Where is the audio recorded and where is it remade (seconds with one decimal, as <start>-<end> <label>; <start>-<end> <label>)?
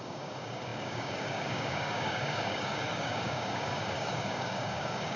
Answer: 0.0-5.2 remade